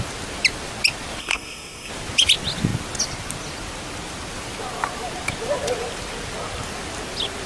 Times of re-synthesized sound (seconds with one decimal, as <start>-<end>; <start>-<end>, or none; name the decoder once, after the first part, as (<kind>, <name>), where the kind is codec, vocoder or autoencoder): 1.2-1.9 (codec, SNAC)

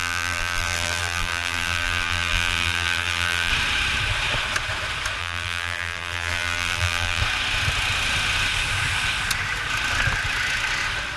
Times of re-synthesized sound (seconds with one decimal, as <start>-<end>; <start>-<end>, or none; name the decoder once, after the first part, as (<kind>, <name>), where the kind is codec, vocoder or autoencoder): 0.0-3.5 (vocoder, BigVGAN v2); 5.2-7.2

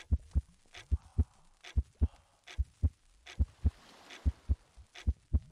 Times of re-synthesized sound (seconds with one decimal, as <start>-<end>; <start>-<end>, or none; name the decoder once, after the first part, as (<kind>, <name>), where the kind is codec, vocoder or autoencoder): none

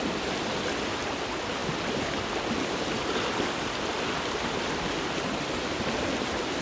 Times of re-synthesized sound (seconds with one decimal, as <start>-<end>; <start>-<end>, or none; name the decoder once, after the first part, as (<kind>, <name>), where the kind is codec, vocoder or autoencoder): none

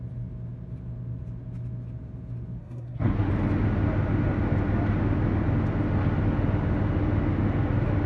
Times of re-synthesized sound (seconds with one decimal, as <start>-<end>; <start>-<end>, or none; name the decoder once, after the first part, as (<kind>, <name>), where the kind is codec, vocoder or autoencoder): 2.6-3.3 (codec, SNAC)

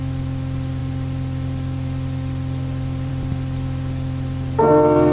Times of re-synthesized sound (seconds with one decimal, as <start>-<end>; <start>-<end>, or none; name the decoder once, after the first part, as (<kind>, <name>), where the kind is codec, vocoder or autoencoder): none

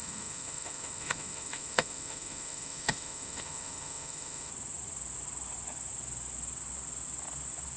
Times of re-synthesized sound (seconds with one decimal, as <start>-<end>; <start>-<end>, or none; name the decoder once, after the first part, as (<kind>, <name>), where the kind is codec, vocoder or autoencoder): 0.0-4.5 (autoencoder, DAC-VAE)

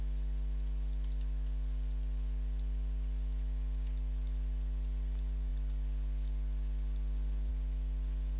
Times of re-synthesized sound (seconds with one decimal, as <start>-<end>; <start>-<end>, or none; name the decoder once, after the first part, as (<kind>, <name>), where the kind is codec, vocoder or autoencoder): none